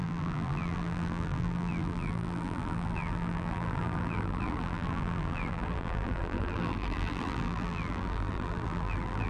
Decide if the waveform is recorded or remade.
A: remade